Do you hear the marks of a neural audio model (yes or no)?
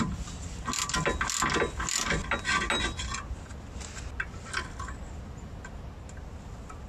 no